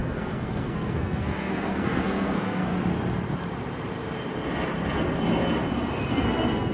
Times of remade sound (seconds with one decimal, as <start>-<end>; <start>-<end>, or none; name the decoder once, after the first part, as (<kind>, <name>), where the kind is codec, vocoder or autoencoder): 0.0-2.7 (codec, SNAC); 6.1-6.7